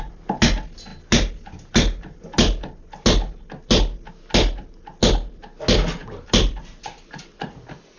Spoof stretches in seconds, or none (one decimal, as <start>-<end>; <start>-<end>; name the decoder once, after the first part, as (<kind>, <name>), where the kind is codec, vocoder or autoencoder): 6.0-7.2 (vocoder, BigVGAN v2)